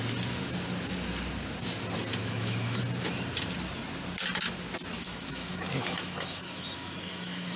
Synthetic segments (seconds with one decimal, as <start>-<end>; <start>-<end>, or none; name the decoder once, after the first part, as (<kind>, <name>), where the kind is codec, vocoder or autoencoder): 2.2-2.8 (autoencoder, DAC-VAE); 5.0-7.6